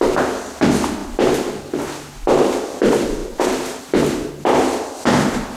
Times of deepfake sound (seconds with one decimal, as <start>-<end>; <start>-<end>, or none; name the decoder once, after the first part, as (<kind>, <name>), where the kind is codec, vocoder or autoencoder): none